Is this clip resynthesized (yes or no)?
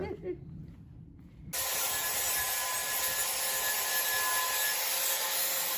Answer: no